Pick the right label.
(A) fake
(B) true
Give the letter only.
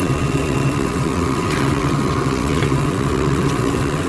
A